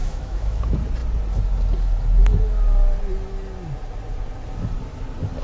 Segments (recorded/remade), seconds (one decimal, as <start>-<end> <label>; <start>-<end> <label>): 0.0-0.6 remade; 0.6-5.4 recorded